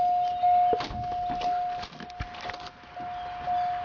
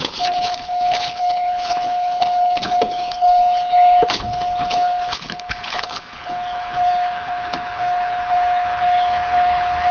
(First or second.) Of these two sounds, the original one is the first